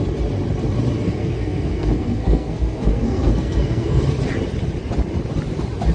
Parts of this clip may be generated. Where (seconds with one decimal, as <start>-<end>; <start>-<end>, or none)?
1.2-4.0